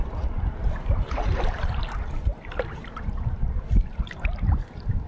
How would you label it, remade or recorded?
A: remade